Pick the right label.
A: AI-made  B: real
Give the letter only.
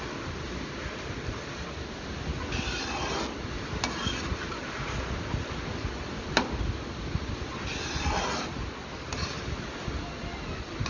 B